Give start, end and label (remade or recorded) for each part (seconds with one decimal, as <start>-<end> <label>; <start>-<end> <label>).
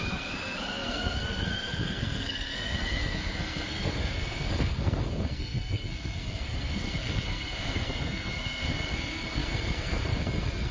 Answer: 0.0-10.7 remade